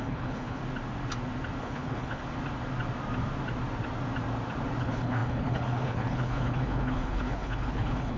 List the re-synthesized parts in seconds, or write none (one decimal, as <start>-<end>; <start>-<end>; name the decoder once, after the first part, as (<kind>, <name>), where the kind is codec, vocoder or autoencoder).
0.0-0.6 (codec, HILCodec); 1.6-2.2; 4.8-8.2